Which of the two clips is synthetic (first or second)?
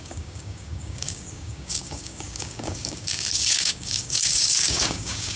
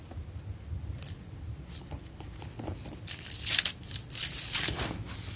first